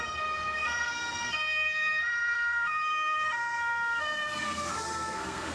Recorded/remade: remade